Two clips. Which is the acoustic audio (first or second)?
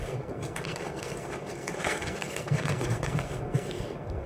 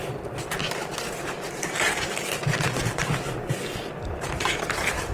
second